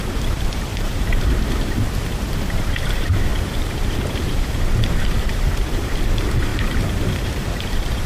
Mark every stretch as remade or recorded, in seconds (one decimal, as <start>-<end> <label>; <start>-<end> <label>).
0.0-8.1 remade